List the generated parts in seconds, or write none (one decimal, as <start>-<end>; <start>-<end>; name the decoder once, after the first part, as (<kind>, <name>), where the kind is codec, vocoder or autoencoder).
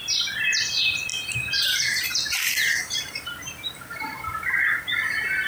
1.1-4.2 (vocoder, BigVGAN v2)